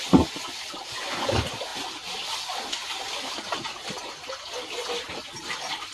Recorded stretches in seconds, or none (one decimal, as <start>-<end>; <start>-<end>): 0.0-5.9